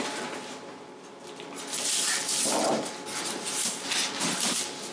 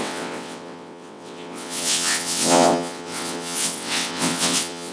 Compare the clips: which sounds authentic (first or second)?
first